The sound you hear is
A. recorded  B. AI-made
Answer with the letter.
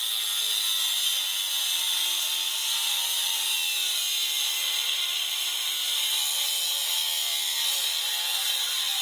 A